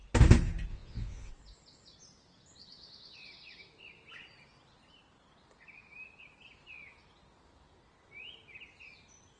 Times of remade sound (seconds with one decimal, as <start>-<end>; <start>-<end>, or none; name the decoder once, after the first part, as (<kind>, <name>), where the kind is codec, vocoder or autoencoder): 0.7-1.3 (vocoder, WaveNeXt)